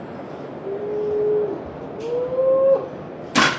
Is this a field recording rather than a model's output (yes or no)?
yes